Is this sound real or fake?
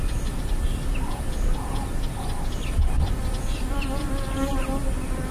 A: fake